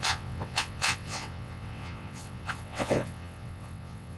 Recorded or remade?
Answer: remade